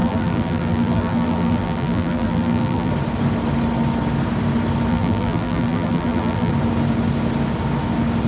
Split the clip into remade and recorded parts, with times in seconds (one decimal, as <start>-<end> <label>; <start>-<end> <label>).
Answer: 0.0-2.9 remade; 2.9-4.9 recorded; 4.9-6.5 remade; 6.5-8.3 recorded